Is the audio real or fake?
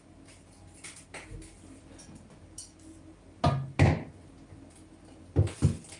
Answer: real